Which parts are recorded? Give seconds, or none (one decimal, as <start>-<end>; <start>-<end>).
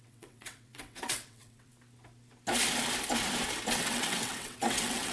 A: 1.7-3.7